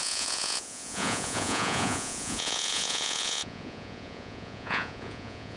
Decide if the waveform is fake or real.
fake